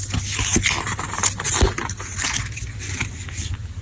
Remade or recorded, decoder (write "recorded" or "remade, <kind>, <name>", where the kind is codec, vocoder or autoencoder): recorded